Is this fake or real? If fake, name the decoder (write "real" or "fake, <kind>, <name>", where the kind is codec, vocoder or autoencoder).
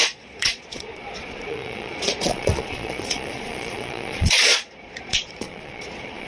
fake, vocoder, Vocos